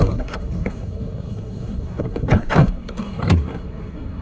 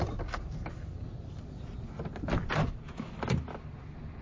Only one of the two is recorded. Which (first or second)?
second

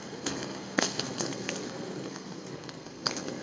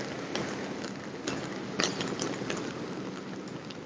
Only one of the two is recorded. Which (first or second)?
second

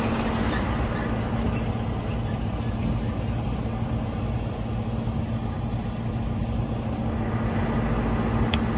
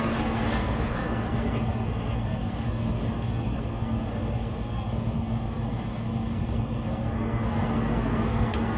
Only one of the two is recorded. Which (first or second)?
first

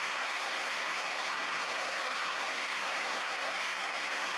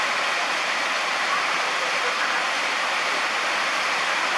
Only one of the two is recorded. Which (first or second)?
second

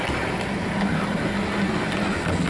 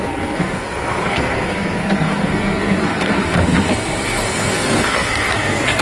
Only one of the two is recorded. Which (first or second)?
first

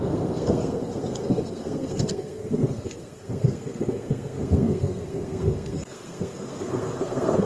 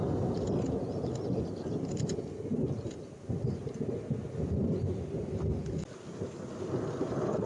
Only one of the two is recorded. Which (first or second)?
second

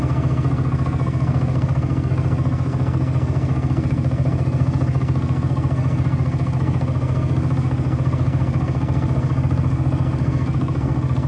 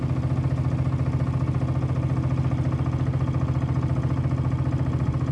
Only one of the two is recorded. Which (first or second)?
second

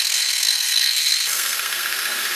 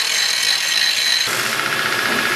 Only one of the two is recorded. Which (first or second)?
second